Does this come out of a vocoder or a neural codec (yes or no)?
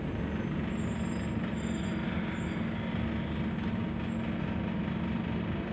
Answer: no